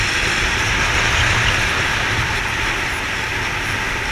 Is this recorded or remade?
recorded